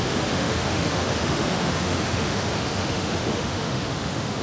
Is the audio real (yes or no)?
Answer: no